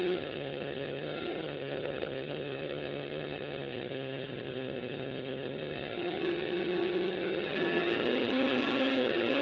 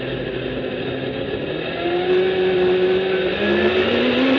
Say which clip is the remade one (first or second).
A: first